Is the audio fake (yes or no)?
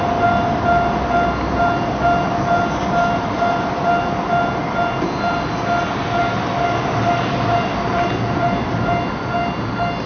no